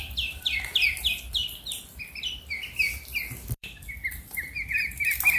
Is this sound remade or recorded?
remade